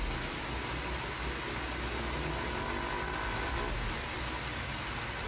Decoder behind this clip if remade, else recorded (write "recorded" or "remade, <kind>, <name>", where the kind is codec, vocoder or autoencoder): recorded